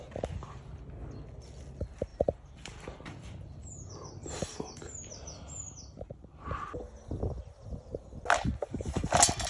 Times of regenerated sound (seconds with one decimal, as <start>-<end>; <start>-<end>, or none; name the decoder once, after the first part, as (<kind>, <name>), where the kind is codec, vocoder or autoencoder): 2.1-7.2 (vocoder, BigVGAN v2)